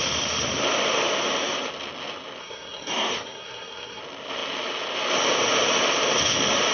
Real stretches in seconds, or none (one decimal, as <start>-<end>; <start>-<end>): 0.0-2.4; 4.0-6.7